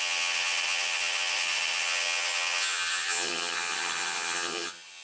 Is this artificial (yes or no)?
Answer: yes